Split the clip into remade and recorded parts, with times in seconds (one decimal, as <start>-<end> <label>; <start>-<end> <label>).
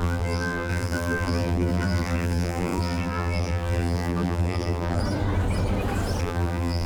0.0-5.0 remade; 5.0-6.2 recorded; 6.2-6.9 remade